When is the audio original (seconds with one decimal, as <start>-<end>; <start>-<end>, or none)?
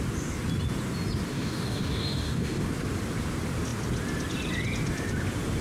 0.0-1.3; 2.7-5.6